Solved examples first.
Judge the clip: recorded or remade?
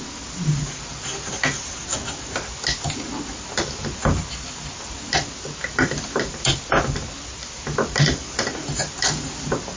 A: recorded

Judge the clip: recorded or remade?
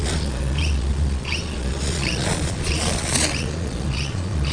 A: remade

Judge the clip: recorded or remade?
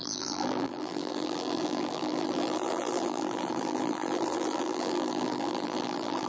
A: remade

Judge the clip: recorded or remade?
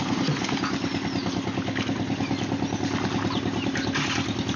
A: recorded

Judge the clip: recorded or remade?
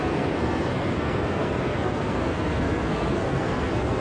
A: remade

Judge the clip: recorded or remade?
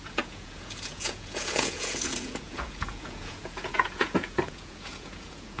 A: remade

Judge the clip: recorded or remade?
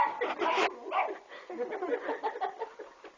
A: recorded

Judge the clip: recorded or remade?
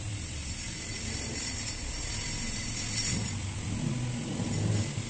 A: recorded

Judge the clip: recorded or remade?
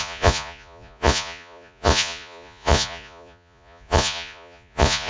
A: remade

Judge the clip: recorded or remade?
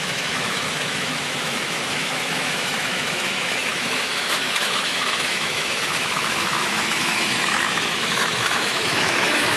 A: remade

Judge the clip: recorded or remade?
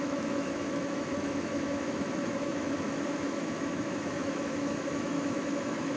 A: remade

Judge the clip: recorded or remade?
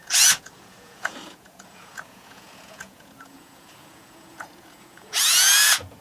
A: remade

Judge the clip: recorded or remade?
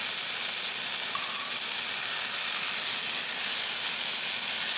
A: recorded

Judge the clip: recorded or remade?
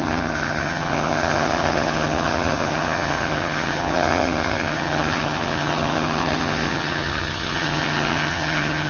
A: remade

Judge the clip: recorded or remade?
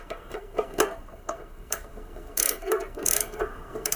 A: remade